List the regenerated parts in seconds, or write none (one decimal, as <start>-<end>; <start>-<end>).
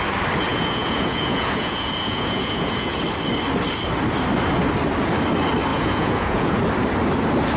0.5-3.0; 5.7-6.6